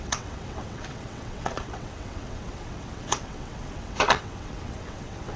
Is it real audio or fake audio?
fake